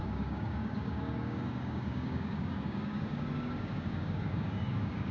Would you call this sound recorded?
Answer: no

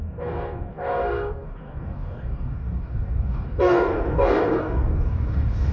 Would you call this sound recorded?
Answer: no